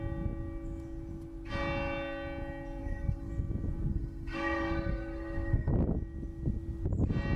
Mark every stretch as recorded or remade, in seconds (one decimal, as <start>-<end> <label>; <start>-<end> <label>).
0.0-2.8 recorded; 2.8-3.3 remade; 3.3-3.9 recorded; 3.9-5.7 remade; 5.7-7.4 recorded

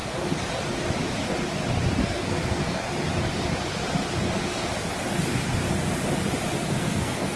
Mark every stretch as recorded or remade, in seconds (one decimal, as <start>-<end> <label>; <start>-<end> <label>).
0.0-2.0 recorded; 2.0-2.8 remade; 2.8-6.6 recorded; 6.6-7.4 remade